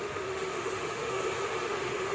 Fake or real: fake